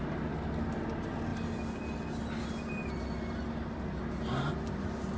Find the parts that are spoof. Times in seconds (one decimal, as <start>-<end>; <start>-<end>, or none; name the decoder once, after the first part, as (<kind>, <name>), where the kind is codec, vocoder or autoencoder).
none